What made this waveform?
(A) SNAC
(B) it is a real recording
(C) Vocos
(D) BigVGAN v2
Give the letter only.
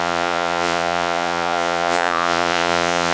C